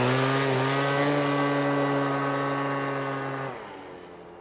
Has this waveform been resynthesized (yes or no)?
no